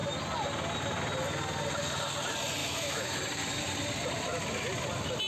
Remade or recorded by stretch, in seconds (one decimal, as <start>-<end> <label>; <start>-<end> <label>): 0.0-2.6 recorded; 2.6-3.3 remade; 3.3-5.3 recorded